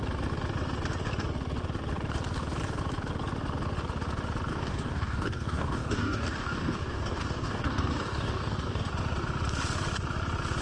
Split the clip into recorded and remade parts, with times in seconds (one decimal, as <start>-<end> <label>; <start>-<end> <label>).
0.0-4.5 recorded; 4.5-8.9 remade; 8.9-10.6 recorded